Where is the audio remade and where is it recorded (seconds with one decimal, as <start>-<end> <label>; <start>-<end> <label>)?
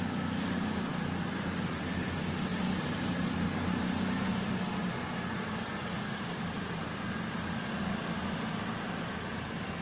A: 0.0-9.8 recorded